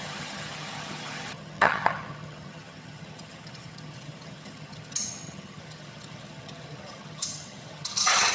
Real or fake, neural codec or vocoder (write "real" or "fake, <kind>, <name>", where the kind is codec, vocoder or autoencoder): fake, vocoder, HiFi-GAN